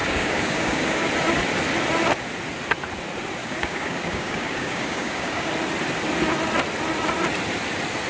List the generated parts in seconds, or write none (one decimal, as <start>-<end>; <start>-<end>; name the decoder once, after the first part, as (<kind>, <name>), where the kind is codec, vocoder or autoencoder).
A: 0.0-1.1 (codec, DAC); 3.4-5.5